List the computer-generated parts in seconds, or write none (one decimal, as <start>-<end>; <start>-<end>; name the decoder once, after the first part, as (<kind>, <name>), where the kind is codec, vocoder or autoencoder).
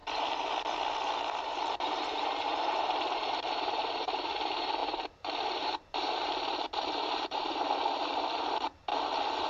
1.4-8.9 (vocoder, BigVGAN v2)